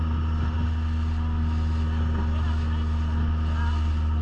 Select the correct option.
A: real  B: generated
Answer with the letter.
A